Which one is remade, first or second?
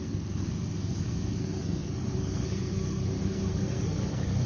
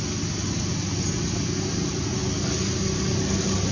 first